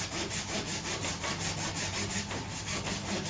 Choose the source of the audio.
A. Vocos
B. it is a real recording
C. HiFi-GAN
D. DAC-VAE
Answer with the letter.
B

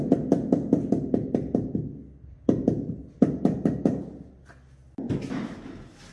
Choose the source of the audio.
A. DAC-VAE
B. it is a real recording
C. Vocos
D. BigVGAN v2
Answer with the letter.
B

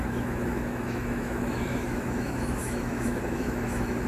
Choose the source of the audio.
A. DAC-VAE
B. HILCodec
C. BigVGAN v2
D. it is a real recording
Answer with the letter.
A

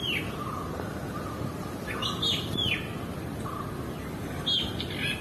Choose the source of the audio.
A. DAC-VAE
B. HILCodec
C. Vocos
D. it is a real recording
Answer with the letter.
D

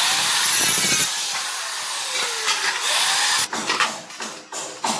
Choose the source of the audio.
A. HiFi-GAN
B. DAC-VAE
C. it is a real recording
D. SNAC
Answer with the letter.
C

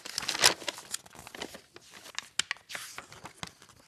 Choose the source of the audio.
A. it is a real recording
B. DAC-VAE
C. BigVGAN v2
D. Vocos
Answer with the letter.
A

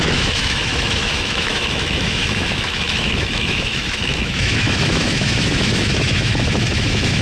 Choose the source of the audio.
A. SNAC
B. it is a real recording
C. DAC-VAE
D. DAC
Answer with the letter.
C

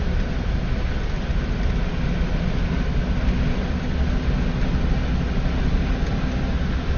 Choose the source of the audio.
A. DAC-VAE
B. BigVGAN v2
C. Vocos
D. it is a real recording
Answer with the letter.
D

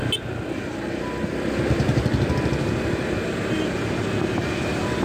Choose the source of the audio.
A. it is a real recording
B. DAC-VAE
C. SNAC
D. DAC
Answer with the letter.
A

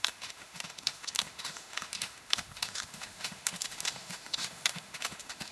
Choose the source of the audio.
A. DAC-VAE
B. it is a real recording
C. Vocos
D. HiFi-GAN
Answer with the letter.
A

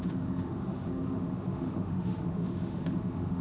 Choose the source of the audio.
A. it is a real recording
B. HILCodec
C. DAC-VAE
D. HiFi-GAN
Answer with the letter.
C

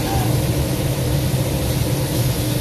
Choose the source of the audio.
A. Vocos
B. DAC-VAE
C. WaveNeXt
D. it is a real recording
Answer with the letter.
D